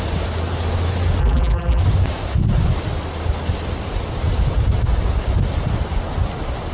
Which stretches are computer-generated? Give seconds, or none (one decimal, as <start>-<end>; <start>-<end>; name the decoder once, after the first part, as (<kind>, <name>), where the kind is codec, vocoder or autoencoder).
1.2-1.8 (vocoder, BigVGAN v2)

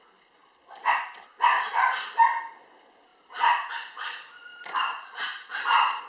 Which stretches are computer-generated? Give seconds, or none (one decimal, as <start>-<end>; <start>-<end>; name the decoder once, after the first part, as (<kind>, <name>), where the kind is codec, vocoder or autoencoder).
3.1-3.7 (vocoder, BigVGAN v2); 4.5-6.1

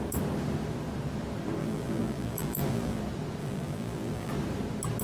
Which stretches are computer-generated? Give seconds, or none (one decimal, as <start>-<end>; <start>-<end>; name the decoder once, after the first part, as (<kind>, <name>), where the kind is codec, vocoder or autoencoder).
1.6-3.0 (vocoder, BigVGAN v2); 3.4-4.3

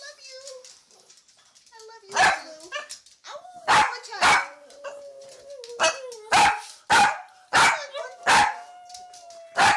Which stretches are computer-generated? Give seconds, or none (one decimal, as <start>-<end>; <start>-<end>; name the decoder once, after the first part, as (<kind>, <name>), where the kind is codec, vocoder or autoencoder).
none

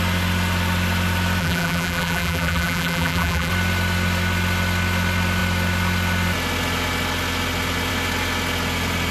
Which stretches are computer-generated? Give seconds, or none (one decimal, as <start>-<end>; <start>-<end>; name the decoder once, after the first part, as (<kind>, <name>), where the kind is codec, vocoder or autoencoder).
1.4-3.5 (vocoder, BigVGAN v2)

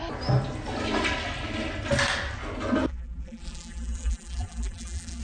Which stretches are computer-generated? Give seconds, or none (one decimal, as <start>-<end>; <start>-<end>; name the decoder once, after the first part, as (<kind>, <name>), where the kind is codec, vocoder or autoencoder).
2.9-5.2 (vocoder, BigVGAN v2)

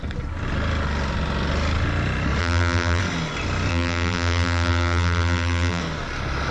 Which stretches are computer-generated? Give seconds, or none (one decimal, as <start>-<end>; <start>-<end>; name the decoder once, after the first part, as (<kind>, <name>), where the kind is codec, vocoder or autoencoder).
2.4-3.0 (vocoder, BigVGAN v2); 3.7-5.8

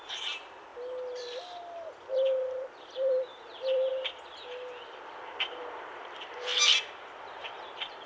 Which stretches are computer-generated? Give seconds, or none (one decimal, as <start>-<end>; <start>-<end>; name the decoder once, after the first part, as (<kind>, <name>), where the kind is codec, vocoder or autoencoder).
0.0-6.5 (vocoder, BigVGAN v2); 7.0-8.1